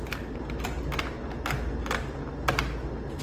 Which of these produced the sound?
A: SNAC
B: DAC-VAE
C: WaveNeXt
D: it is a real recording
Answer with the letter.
D